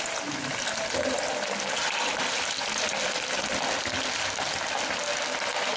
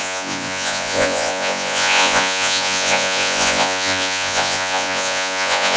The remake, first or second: second